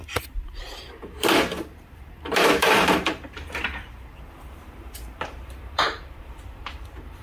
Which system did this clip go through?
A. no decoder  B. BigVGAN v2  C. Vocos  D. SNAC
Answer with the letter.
B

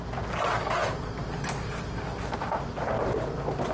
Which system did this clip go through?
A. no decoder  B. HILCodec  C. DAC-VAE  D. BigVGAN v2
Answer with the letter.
A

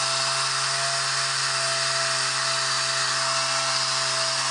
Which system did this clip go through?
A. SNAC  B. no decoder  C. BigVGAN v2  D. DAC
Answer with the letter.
B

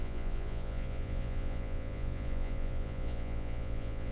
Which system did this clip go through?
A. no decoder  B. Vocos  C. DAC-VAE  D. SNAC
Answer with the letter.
B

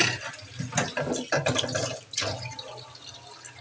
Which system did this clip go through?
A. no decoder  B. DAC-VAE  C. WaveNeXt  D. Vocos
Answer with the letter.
A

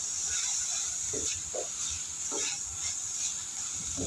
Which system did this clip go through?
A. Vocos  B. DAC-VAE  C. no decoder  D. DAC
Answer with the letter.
C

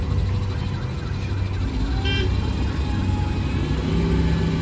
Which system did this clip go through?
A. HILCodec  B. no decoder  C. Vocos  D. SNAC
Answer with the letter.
B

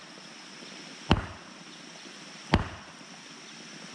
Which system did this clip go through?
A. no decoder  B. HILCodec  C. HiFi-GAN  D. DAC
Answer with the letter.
A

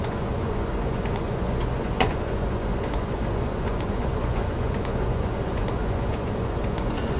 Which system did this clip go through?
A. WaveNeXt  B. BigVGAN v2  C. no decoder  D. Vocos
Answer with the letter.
D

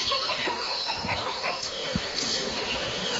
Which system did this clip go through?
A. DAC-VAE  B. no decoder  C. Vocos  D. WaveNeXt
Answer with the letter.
A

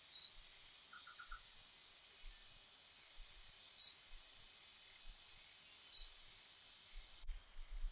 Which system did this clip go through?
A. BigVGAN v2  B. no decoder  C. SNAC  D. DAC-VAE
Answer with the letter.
B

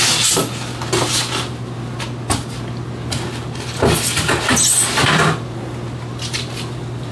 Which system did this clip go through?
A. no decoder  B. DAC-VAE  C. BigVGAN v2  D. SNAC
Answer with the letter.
A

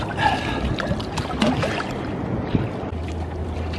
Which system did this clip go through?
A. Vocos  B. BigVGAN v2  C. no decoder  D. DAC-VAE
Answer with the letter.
C